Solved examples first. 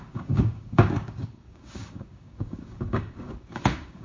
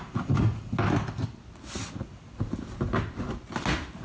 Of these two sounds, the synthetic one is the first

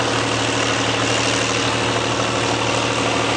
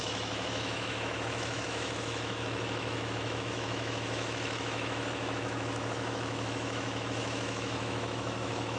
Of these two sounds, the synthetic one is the second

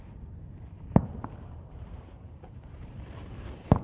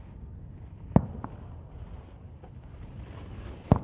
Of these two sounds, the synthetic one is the first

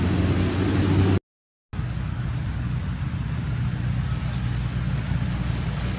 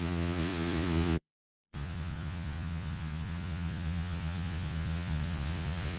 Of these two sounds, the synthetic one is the second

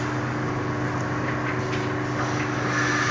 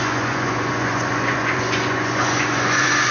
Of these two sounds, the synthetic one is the second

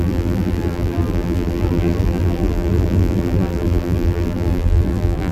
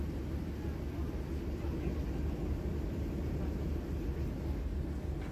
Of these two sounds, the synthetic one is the first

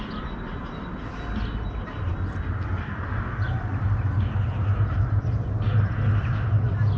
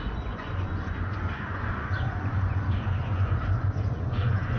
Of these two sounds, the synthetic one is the second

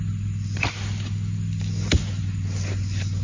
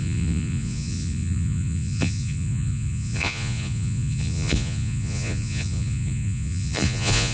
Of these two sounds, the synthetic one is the second